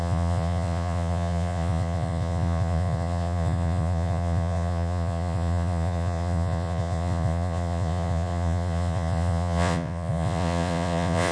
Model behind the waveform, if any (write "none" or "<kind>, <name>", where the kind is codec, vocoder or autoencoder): vocoder, Vocos